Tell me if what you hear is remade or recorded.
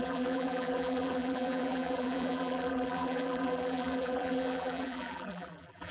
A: remade